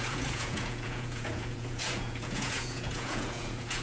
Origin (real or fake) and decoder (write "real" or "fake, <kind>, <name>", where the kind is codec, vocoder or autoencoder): fake, vocoder, Vocos